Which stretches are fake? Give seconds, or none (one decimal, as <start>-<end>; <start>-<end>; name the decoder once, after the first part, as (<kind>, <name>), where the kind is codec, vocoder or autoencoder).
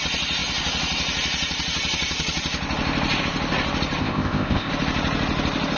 4.0-4.7 (codec, ZipCodec)